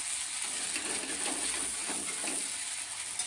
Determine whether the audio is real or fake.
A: real